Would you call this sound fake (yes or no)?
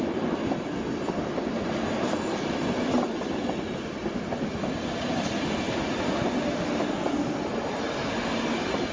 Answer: no